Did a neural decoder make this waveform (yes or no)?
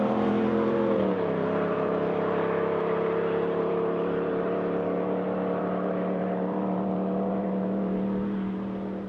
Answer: yes